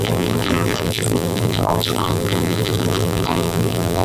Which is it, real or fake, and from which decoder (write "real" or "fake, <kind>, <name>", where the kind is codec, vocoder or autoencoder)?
fake, vocoder, BigVGAN v2